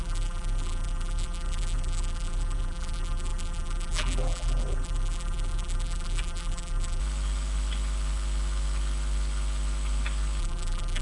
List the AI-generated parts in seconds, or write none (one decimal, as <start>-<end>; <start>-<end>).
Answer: 0.0-7.0; 10.4-11.0